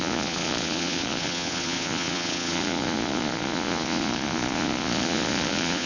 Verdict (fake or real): fake